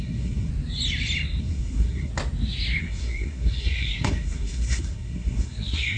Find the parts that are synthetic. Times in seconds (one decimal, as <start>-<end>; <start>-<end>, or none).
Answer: 0.0-0.5; 1.4-2.1; 2.8-6.0